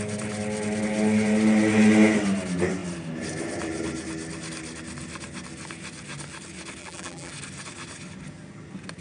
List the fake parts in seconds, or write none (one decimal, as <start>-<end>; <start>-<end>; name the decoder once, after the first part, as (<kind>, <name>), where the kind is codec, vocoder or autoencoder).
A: 6.8-7.3 (vocoder, BigVGAN v2)